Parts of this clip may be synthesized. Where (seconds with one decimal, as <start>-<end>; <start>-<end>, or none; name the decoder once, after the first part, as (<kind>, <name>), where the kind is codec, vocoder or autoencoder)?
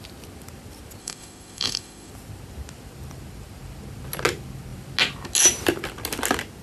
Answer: 1.0-2.1 (autoencoder, DAC-VAE)